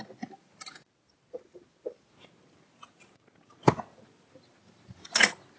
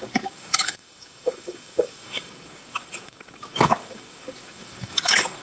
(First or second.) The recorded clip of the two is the first